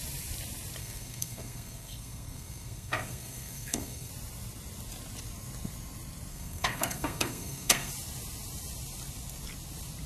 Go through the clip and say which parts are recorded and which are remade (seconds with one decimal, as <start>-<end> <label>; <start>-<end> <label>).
0.0-0.8 recorded; 0.8-4.1 remade; 4.1-6.3 recorded; 6.3-7.9 remade; 7.9-10.1 recorded